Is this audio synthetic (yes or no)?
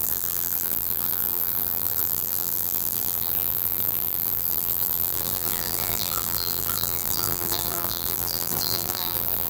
yes